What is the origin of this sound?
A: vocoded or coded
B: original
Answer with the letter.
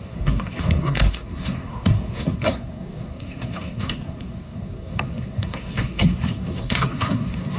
A